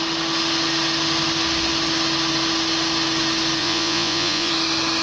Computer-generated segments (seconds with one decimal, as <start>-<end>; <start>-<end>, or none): 3.6-4.5